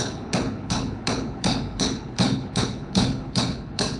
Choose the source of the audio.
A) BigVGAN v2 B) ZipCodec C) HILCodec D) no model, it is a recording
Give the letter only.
C